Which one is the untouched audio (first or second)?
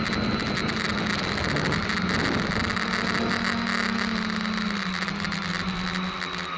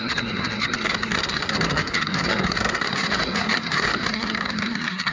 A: first